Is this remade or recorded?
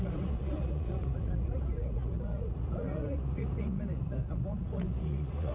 remade